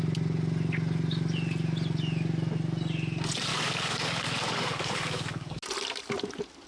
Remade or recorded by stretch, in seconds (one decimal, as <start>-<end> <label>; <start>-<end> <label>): 0.0-3.5 recorded; 3.5-5.6 remade; 5.6-6.7 recorded